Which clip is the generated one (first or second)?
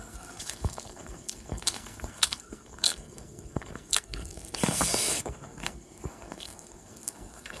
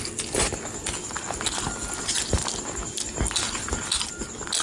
first